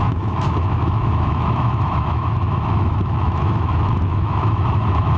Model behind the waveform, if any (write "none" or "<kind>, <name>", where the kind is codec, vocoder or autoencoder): autoencoder, DAC-VAE